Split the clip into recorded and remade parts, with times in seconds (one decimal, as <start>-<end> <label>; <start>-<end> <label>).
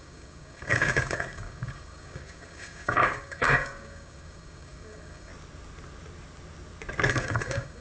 0.0-5.3 remade; 5.3-7.1 recorded; 7.1-7.8 remade